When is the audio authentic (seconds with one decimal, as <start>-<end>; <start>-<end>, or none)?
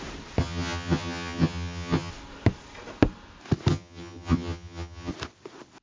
0.0-0.4; 2.1-3.7; 5.1-5.8